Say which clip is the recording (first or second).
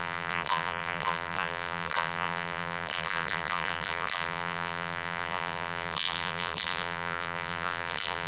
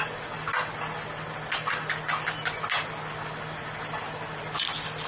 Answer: second